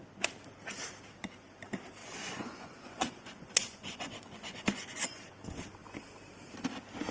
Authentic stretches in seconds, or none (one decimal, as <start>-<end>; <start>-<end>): 0.0-2.0; 5.2-7.1